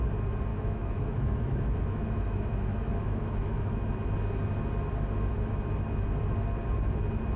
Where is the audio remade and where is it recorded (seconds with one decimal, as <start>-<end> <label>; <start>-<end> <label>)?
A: 0.0-0.5 recorded; 0.5-3.9 remade; 3.9-7.4 recorded